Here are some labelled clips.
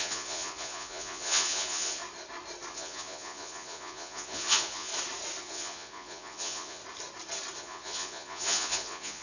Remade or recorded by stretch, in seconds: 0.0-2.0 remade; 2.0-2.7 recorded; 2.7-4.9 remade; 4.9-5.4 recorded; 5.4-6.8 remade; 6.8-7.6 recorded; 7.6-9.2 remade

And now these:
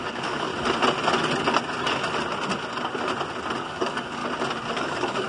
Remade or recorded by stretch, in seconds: 0.0-0.5 remade; 0.5-3.6 recorded; 3.6-4.2 remade; 4.2-4.7 recorded; 4.7-5.3 remade

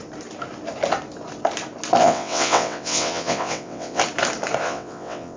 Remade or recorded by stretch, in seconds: 0.0-2.0 recorded; 2.0-4.0 remade; 4.0-4.6 recorded; 4.6-5.4 remade

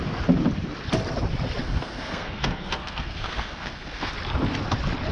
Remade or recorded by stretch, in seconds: 0.0-1.6 recorded; 1.6-4.1 remade; 4.1-5.1 recorded

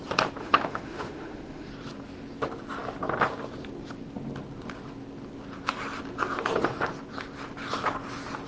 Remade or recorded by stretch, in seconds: 0.0-0.4 recorded; 0.4-1.7 remade; 1.7-8.5 recorded

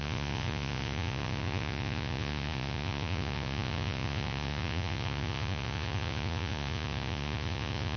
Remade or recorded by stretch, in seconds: 0.0-8.0 remade

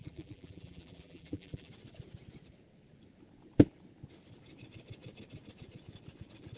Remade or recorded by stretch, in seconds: 0.0-1.7 remade; 1.7-6.6 recorded